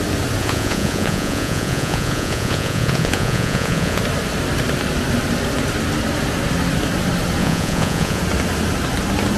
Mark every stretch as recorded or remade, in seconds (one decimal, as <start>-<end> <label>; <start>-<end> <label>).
0.0-0.4 recorded; 0.4-4.0 remade; 4.0-7.4 recorded; 7.4-8.2 remade; 8.2-9.4 recorded